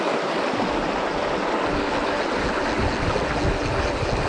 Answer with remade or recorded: recorded